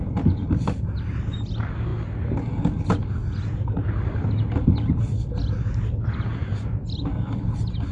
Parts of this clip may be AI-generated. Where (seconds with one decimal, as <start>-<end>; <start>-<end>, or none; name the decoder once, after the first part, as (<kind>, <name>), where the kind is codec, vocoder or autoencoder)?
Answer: none